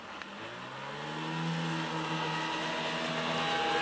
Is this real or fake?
real